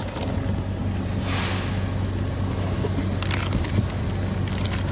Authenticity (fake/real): real